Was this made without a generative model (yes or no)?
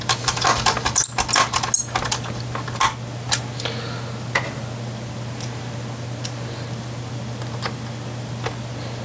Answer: yes